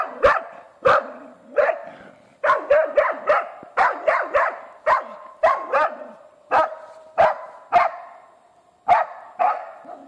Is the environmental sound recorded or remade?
remade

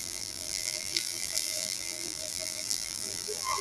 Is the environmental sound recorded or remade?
remade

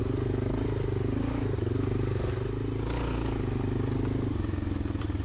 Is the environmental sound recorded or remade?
recorded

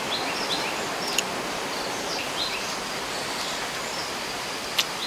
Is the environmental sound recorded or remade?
recorded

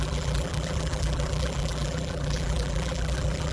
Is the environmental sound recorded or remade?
remade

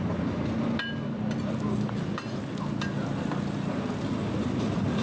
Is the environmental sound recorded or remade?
recorded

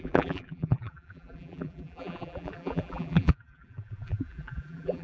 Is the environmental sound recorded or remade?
remade